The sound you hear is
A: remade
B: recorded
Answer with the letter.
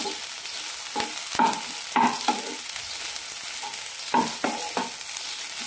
B